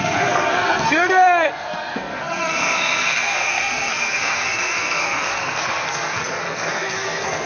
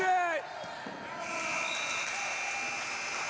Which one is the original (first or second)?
second